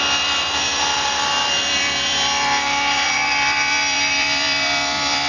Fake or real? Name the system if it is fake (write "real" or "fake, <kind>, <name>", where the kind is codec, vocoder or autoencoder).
fake, vocoder, BigVGAN v2